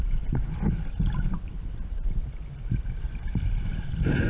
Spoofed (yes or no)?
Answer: no